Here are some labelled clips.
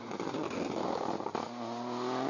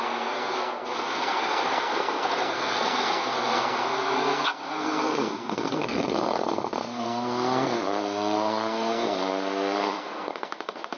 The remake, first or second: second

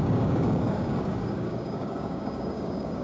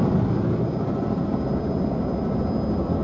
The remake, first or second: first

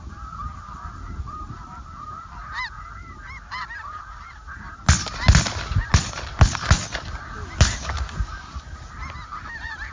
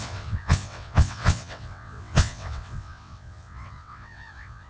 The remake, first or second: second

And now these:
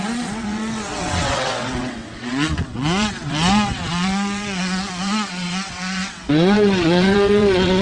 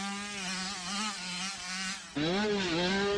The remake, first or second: first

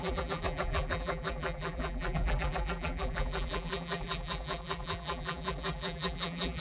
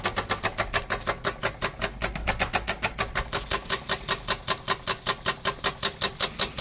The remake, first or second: first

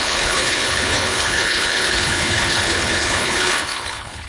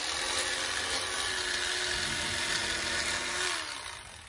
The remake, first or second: first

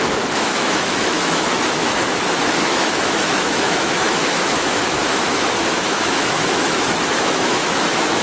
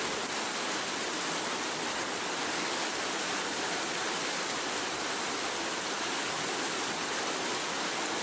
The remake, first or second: first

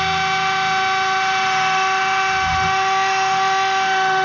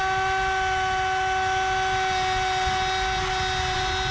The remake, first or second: first